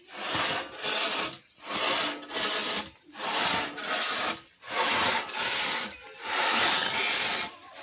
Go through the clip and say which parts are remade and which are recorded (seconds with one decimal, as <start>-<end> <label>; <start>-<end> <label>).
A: 0.0-2.6 recorded; 2.6-5.7 remade; 5.7-7.8 recorded